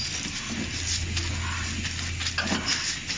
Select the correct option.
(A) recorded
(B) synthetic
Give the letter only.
A